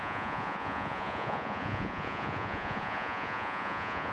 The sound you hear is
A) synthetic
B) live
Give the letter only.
A